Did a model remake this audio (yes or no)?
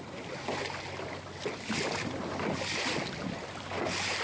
no